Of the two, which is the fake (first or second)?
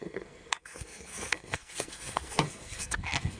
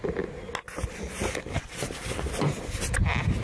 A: first